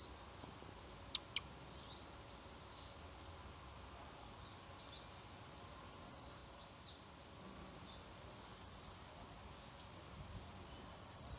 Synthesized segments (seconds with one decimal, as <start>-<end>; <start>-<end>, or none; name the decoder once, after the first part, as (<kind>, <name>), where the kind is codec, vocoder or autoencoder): none